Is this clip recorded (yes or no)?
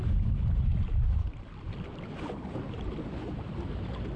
yes